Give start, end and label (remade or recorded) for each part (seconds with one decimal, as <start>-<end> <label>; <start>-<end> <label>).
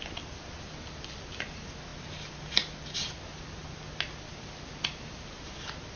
0.0-6.0 recorded